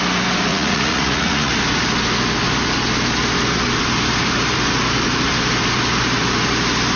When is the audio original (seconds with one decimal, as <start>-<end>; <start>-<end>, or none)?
0.0-0.5; 1.5-7.0